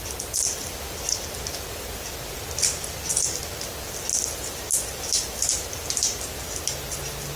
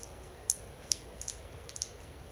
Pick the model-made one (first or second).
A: second